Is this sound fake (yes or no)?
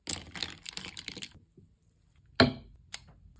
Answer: no